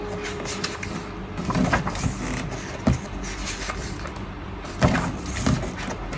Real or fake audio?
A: real